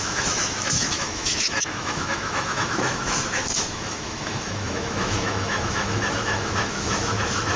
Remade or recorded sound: remade